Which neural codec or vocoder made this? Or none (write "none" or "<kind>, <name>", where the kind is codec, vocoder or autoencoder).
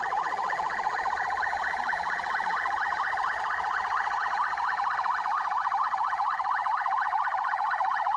vocoder, Vocos